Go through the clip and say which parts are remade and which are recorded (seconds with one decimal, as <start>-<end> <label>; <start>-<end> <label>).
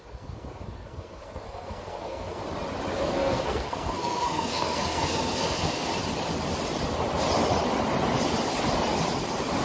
0.0-2.4 remade; 2.4-3.0 recorded; 3.0-5.9 remade; 5.9-9.6 recorded